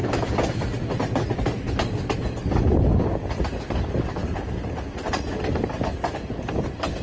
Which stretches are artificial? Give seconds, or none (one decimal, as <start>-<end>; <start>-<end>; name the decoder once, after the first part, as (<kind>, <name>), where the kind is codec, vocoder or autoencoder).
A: none